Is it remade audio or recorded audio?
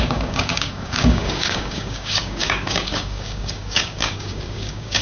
remade